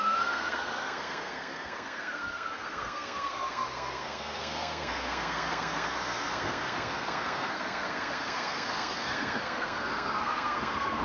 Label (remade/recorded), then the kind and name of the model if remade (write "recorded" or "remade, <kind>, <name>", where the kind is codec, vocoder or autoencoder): remade, codec, SNAC